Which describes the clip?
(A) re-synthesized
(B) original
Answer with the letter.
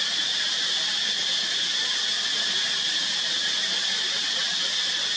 B